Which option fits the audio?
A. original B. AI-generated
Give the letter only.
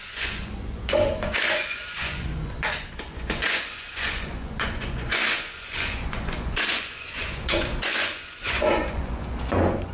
B